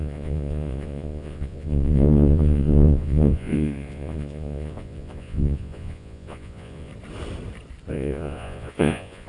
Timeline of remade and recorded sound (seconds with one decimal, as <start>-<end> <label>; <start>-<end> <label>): 0.0-6.9 remade; 6.9-7.9 recorded; 7.9-9.3 remade